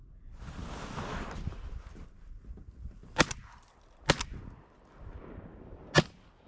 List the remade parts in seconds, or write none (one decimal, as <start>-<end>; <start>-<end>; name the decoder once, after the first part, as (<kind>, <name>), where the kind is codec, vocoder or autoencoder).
none